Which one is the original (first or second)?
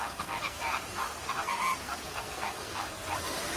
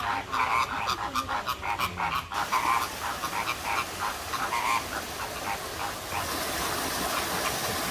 second